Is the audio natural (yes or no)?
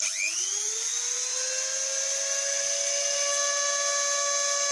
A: yes